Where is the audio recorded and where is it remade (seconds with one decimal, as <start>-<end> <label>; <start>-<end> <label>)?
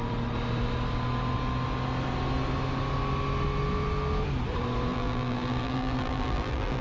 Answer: 0.0-4.9 recorded; 4.9-6.8 remade